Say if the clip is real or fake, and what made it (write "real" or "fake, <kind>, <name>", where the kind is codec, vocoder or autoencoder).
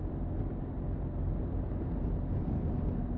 real